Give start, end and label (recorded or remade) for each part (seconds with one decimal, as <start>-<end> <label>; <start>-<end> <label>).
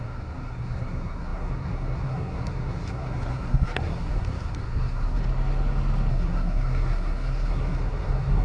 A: 0.0-5.2 remade; 5.2-6.1 recorded; 6.1-8.4 remade